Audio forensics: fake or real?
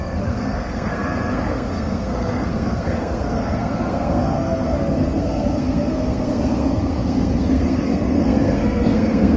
fake